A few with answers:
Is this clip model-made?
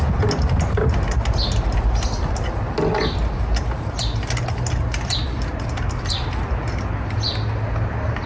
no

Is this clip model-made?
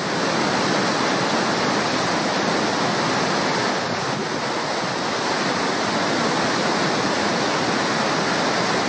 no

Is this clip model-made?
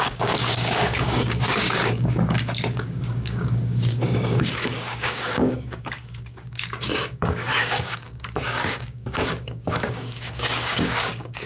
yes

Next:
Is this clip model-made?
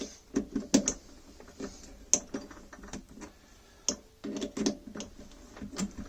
no